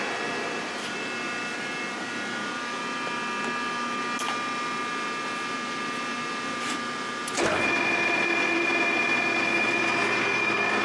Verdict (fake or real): real